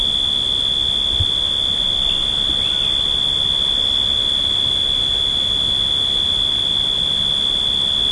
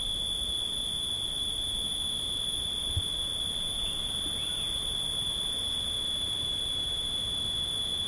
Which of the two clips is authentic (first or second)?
first